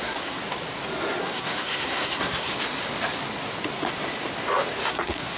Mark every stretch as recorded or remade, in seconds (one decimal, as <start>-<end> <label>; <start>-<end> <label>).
0.0-0.4 remade; 0.4-1.2 recorded; 1.2-2.5 remade; 2.5-4.9 recorded; 4.9-5.4 remade